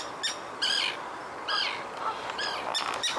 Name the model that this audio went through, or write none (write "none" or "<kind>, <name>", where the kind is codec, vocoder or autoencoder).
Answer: none